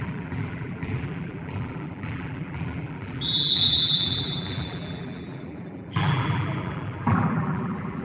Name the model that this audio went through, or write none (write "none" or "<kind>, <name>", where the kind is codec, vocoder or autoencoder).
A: vocoder, BigVGAN v2